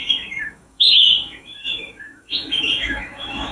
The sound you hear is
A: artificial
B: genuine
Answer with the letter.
A